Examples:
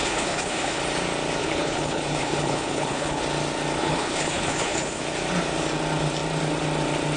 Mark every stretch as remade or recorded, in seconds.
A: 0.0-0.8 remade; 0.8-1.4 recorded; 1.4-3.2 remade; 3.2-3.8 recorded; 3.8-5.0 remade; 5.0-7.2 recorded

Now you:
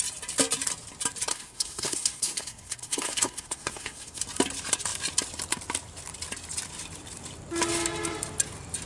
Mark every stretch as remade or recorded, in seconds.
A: 0.0-1.3 recorded; 1.3-4.2 remade; 4.2-8.9 recorded

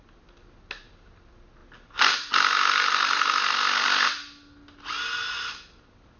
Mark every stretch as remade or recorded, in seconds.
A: 0.0-6.2 recorded